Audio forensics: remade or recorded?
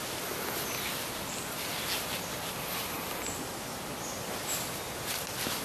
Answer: recorded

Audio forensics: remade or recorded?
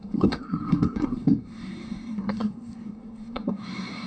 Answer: remade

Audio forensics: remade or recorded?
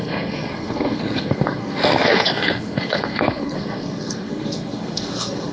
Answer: remade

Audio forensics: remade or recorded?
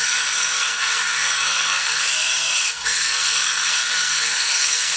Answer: remade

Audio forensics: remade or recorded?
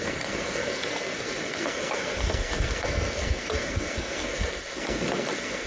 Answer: remade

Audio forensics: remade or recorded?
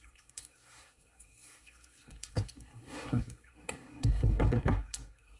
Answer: remade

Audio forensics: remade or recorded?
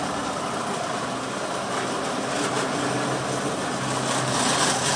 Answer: recorded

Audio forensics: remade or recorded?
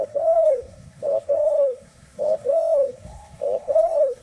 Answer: remade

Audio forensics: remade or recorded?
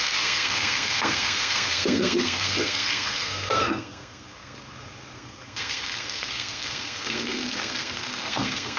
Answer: remade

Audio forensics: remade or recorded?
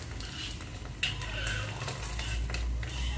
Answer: recorded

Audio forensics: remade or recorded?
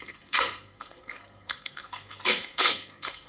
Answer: remade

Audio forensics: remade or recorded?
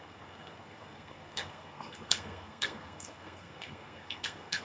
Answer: remade